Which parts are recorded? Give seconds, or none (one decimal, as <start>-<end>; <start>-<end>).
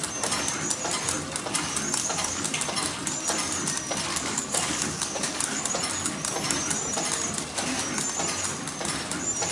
0.0-2.0; 2.6-4.1; 5.6-9.5